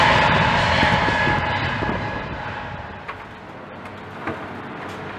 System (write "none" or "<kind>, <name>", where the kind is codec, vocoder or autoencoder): none